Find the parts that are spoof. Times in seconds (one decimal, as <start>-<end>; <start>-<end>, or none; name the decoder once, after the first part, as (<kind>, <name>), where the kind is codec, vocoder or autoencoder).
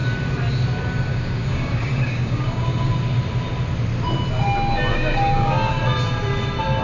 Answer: 1.1-2.9 (codec, DAC); 4.9-5.7